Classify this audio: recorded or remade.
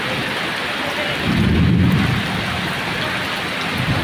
recorded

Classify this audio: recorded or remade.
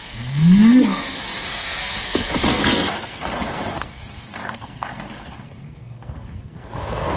remade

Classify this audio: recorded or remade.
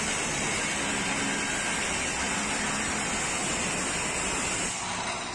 recorded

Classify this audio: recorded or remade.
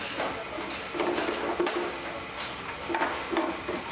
recorded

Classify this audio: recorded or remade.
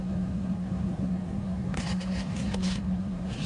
remade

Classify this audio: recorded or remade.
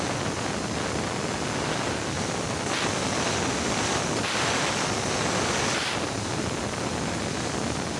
recorded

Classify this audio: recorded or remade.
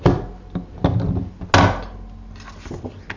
recorded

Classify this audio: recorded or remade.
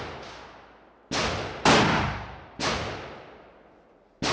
recorded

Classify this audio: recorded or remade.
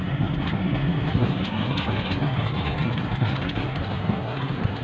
remade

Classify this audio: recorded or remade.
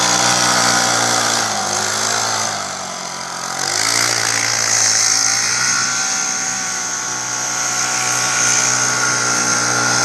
recorded